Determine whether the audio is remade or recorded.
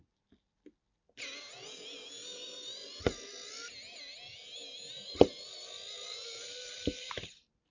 recorded